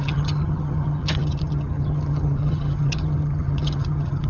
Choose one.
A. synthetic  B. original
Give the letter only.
A